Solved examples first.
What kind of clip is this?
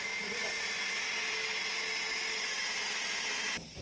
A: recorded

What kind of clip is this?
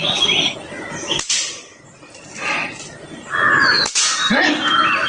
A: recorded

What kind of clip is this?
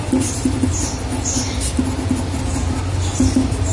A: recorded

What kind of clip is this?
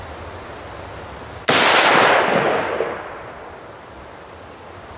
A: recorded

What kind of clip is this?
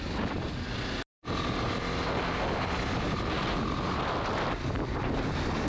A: recorded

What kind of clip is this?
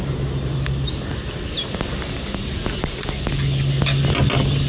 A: recorded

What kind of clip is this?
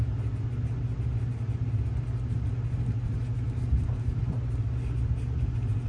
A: recorded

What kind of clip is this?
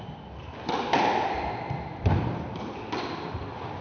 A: recorded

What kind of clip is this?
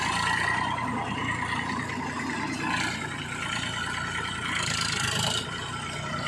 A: recorded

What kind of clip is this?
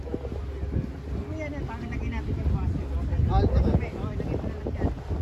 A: recorded